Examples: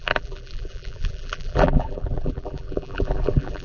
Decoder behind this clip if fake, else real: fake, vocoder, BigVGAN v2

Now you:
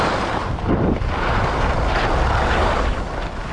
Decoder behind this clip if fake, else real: real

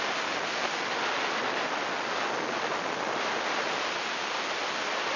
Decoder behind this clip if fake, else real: real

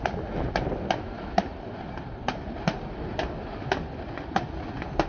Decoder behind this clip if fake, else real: real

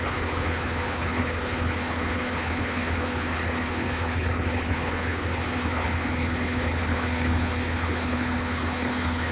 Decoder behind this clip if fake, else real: fake, codec, HILCodec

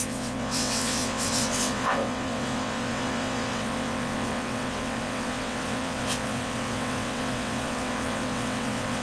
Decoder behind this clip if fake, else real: fake, vocoder, WaveNeXt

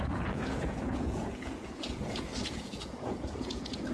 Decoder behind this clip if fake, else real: fake, vocoder, Vocos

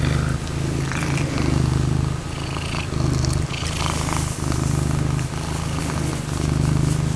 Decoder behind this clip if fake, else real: real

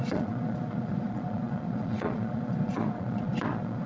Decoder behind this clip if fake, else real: fake, vocoder, Vocos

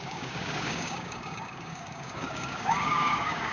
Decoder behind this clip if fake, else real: fake, codec, DAC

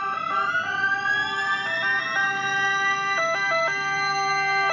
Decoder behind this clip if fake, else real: real